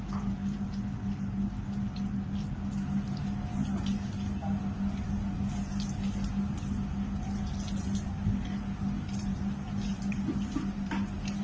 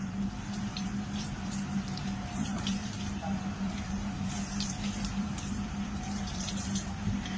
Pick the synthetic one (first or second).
second